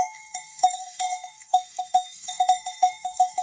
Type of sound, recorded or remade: remade